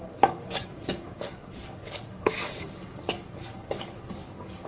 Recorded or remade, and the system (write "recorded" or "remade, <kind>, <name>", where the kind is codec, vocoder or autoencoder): remade, codec, DAC